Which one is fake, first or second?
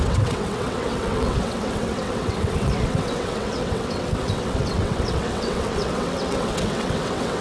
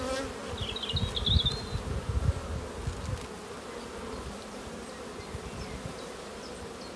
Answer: first